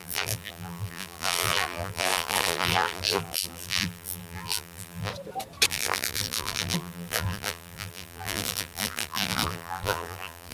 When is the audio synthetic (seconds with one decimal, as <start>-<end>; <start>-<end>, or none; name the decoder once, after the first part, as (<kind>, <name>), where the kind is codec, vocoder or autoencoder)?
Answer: 0.0-5.1 (vocoder, BigVGAN v2); 5.7-10.5